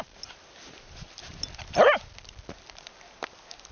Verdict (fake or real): real